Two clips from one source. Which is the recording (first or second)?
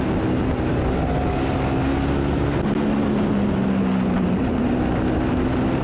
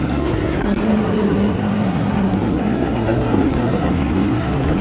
first